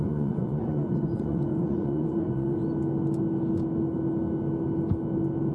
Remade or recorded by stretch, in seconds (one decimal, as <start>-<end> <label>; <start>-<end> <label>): 0.0-2.6 remade; 2.6-5.5 recorded